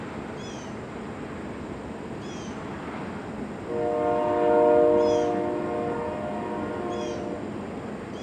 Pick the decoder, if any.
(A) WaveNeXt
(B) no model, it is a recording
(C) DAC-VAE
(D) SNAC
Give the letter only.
B